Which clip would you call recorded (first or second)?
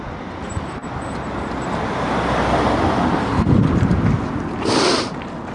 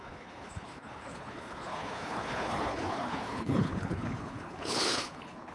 first